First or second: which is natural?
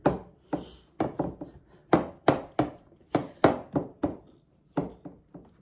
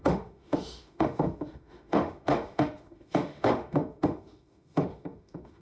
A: first